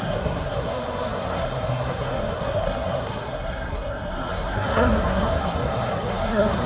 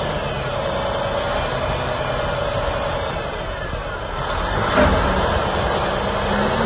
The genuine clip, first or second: second